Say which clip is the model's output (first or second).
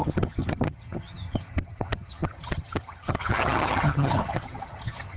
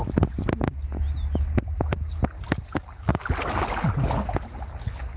first